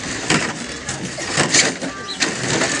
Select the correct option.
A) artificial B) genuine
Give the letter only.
B